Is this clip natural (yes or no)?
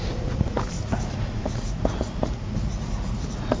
no